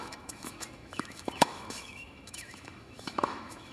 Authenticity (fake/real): fake